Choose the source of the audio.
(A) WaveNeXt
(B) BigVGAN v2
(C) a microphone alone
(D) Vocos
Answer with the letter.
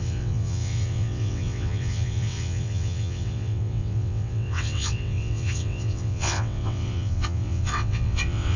A